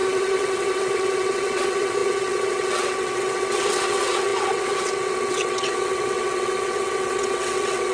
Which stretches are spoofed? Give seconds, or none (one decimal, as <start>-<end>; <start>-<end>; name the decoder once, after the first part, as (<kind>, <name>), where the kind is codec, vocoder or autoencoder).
0.0-7.9 (vocoder, WaveNeXt)